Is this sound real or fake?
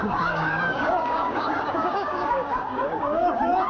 fake